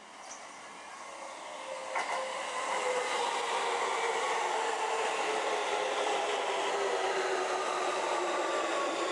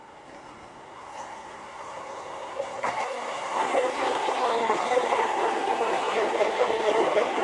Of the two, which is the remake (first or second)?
second